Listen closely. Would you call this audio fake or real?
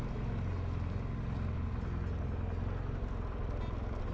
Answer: real